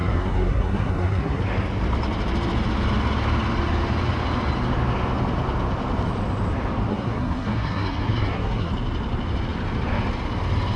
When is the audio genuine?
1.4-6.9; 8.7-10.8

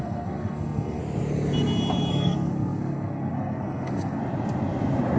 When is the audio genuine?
1.0-2.1; 4.2-5.2

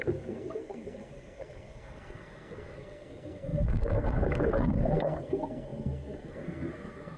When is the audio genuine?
none

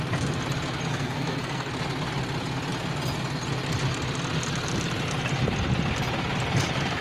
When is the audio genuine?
0.0-0.9; 1.7-7.0

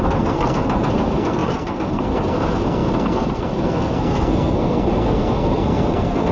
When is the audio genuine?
none